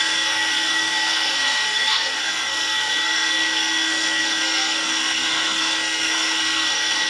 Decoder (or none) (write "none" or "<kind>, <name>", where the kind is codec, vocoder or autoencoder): codec, SNAC